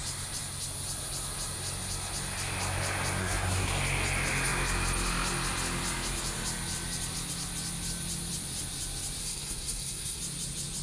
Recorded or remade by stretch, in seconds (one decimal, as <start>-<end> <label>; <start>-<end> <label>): 0.0-3.2 recorded; 3.2-3.7 remade; 3.7-9.2 recorded; 9.2-10.2 remade; 10.2-10.8 recorded